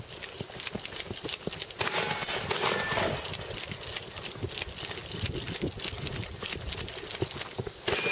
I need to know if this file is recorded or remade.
recorded